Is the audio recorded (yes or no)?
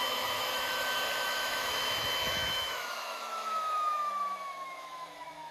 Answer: no